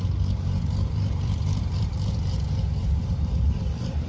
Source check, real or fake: fake